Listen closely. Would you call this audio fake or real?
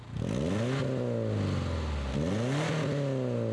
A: real